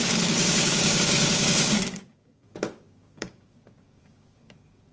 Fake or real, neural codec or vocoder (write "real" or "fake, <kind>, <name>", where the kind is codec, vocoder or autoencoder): fake, codec, DAC